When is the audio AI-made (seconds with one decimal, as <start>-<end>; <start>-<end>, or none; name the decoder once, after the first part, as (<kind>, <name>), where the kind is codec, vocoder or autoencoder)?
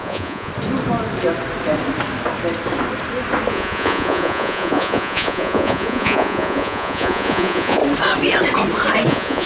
0.0-0.5 (vocoder, Vocos); 3.5-7.8; 9.1-9.5